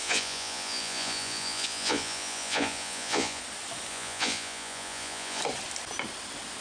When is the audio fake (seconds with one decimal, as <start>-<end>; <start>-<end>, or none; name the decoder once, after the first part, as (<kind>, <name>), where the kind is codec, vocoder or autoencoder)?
0.0-3.4 (vocoder, Vocos); 3.9-5.4

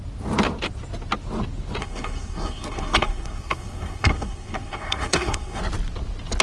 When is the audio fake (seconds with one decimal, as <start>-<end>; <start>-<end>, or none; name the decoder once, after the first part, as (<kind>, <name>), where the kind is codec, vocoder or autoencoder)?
1.8-5.6 (codec, SNAC)